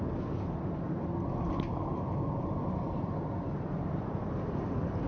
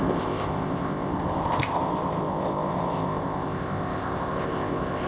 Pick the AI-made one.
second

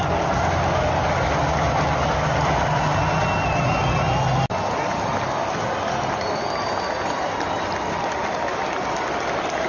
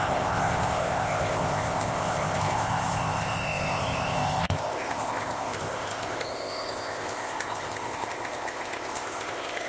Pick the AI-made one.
second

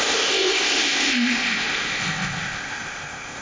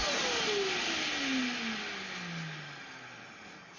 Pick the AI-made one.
first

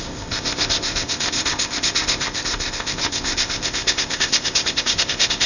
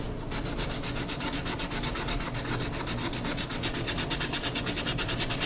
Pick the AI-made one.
first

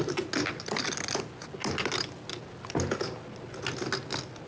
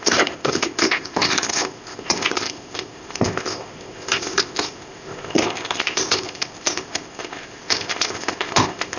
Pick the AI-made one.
second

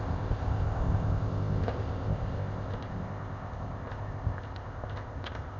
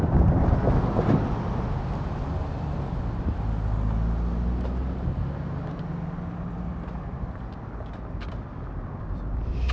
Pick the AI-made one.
first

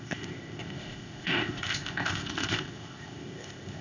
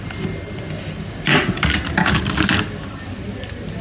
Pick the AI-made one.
first